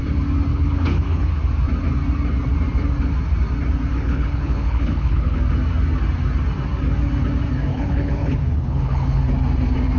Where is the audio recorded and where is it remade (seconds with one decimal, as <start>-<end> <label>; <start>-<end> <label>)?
0.0-0.5 recorded; 0.5-1.4 remade; 1.4-3.9 recorded; 3.9-5.4 remade; 5.4-7.7 recorded; 7.7-9.2 remade; 9.2-10.0 recorded

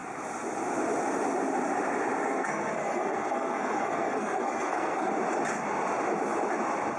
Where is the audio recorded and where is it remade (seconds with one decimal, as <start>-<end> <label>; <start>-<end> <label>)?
0.0-2.2 recorded; 2.2-5.1 remade; 5.1-7.0 recorded

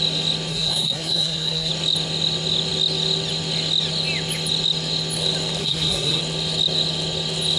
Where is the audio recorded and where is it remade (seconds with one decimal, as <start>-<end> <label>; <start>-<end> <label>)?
0.0-0.5 recorded; 0.5-1.7 remade; 1.7-5.6 recorded; 5.6-6.2 remade; 6.2-7.6 recorded

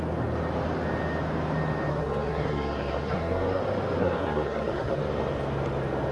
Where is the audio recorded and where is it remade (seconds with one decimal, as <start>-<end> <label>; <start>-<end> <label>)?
0.0-1.9 recorded; 1.9-3.6 remade; 3.6-4.0 recorded; 4.0-5.0 remade; 5.0-6.1 recorded